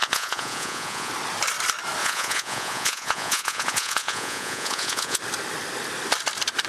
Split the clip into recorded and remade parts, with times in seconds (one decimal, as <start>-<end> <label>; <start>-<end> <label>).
0.0-1.1 remade; 1.1-2.0 recorded; 2.0-5.2 remade; 5.2-6.7 recorded